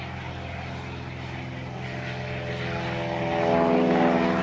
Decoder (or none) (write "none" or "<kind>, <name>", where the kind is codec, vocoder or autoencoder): none